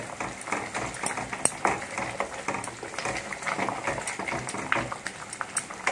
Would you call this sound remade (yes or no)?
no